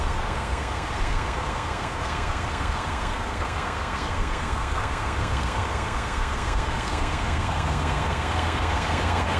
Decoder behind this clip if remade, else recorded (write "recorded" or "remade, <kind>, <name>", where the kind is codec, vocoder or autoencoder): remade, codec, SNAC